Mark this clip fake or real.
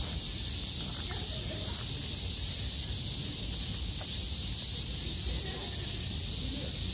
real